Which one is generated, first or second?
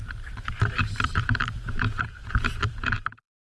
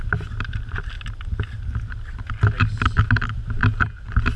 first